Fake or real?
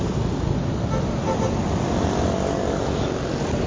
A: real